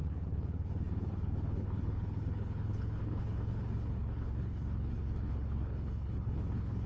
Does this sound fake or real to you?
fake